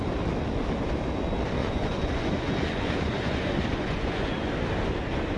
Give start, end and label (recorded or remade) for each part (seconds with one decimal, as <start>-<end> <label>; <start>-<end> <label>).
0.0-1.6 recorded; 1.6-4.5 remade; 4.5-5.4 recorded